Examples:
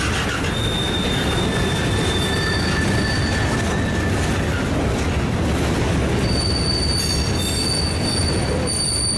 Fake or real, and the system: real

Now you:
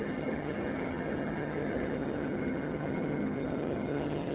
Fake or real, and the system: fake, vocoder, HiFi-GAN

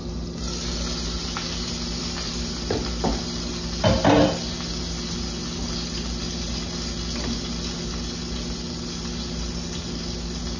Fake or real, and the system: real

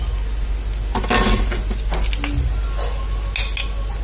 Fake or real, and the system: real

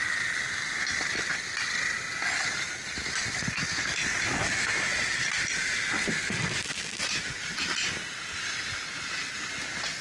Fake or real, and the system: real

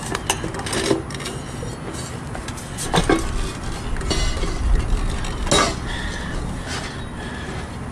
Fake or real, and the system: real